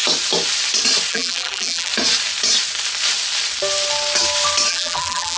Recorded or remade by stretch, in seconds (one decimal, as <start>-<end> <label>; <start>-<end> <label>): 0.0-1.1 recorded; 1.1-1.9 remade; 1.9-4.7 recorded; 4.7-5.4 remade